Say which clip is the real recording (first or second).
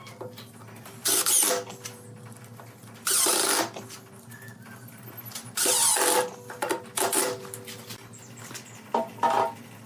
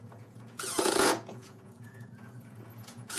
first